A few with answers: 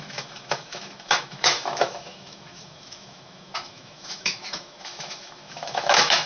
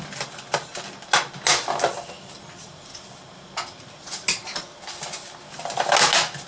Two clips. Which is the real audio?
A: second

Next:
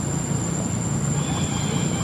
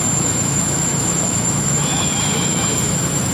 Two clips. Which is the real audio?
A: first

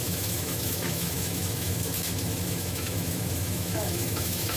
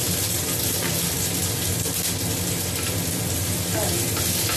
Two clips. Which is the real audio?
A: second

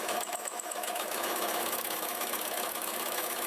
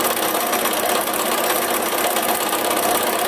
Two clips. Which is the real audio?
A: second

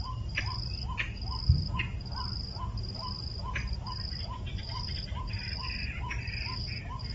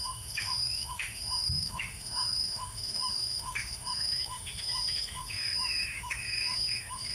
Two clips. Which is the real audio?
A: first